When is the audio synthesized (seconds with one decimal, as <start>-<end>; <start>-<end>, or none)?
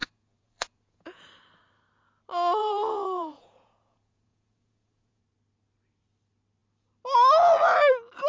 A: 0.0-1.2; 2.6-5.2